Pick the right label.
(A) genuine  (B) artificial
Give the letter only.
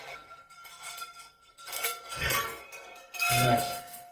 B